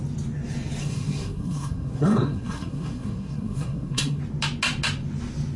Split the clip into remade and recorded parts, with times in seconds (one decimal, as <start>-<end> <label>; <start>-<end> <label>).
0.0-0.8 recorded; 0.8-4.2 remade; 4.2-5.6 recorded